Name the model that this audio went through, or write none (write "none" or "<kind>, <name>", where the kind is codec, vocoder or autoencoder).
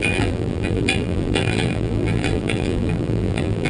vocoder, BigVGAN v2